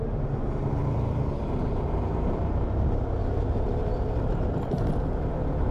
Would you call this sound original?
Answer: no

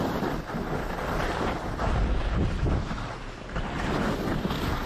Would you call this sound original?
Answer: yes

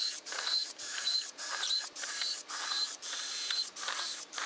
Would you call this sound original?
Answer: no